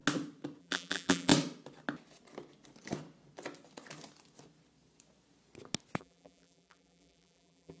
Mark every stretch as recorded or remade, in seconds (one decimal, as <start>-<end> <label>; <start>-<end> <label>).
0.0-0.6 recorded; 0.6-1.3 remade; 1.3-6.0 recorded; 6.0-7.8 remade